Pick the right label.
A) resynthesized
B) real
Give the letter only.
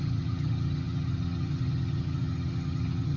A